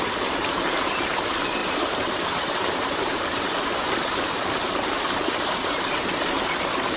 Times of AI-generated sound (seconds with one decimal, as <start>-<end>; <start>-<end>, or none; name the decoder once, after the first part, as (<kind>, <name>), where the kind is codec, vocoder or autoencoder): 1.6-5.8 (vocoder, BigVGAN v2)